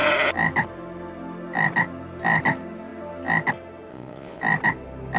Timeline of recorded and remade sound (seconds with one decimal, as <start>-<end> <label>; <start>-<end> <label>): 0.0-3.9 recorded; 3.9-4.4 remade; 4.4-5.2 recorded